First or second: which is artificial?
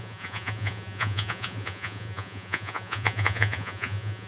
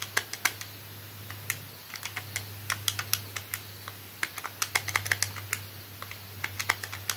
first